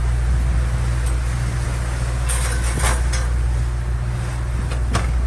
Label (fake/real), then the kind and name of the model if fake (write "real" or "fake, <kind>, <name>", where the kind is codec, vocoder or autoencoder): real